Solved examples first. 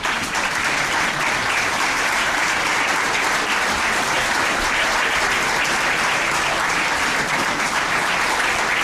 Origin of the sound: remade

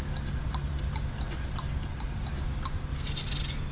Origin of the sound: recorded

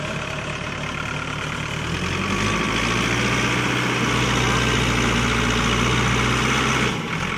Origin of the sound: recorded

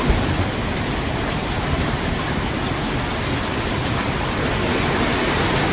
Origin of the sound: recorded